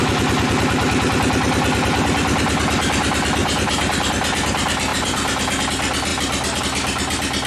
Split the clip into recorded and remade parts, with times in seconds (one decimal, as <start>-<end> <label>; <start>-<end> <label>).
0.0-3.4 recorded; 3.4-4.1 remade; 4.1-4.9 recorded; 4.9-5.6 remade; 5.6-7.5 recorded